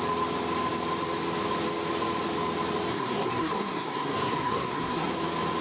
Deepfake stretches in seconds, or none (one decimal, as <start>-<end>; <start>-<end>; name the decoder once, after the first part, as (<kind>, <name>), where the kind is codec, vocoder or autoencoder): 2.9-5.1 (codec, SNAC)